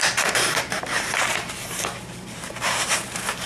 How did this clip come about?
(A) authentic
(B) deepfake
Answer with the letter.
B